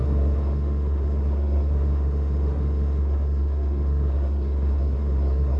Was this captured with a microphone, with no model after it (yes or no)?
no